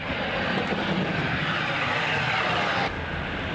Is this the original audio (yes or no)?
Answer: yes